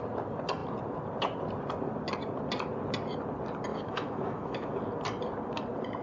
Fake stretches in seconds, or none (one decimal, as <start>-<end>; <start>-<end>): 3.7-4.8